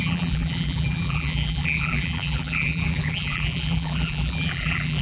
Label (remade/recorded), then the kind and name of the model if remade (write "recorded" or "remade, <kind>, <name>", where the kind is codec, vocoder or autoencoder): remade, vocoder, BigVGAN v2